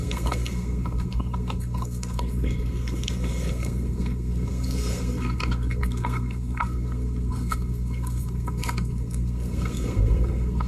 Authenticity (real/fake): fake